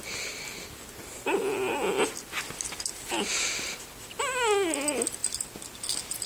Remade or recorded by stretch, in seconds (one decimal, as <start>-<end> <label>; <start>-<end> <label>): 0.0-6.3 recorded

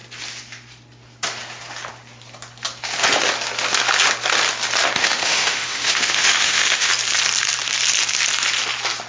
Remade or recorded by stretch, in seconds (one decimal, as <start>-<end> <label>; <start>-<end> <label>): 0.0-5.0 recorded; 5.0-6.9 remade; 6.9-9.1 recorded

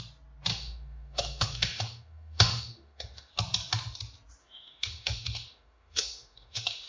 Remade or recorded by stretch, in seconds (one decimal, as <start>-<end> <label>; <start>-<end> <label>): 0.0-0.5 recorded; 0.5-3.3 remade; 3.3-4.4 recorded; 4.4-6.9 remade

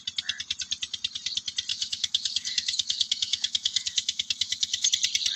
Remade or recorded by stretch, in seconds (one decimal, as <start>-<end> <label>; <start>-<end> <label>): 0.0-1.7 recorded; 1.7-4.9 remade; 4.9-5.4 recorded

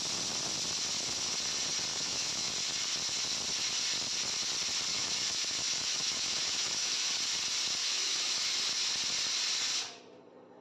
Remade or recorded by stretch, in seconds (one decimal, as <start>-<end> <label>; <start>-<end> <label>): 0.0-1.9 recorded; 1.9-2.5 remade; 2.5-4.9 recorded; 4.9-7.2 remade; 7.2-7.8 recorded; 7.8-8.4 remade; 8.4-10.6 recorded

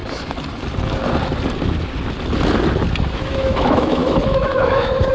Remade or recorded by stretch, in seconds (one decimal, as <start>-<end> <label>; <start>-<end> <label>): 0.0-3.1 recorded; 3.1-5.1 remade